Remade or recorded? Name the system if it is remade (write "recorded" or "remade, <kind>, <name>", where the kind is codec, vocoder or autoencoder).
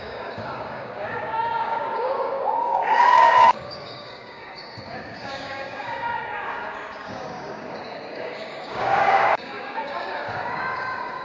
remade, codec, DAC